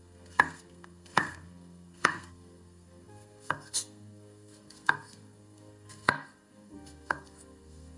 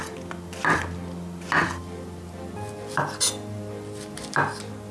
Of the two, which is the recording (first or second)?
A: second